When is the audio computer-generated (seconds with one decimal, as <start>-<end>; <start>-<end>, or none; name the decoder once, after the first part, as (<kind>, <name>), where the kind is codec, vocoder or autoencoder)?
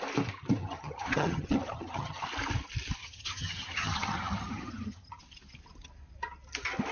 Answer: 0.6-2.2 (vocoder, HiFi-GAN); 3.0-5.2